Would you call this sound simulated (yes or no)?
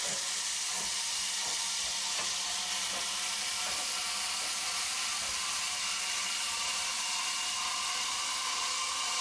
no